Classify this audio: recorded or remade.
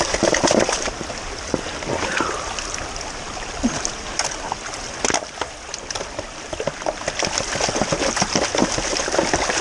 recorded